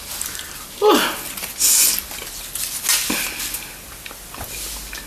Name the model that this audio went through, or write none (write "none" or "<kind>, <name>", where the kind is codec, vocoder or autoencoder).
none